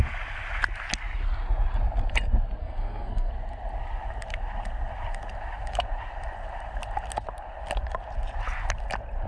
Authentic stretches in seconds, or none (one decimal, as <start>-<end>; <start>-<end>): 0.0-2.6; 3.3-9.3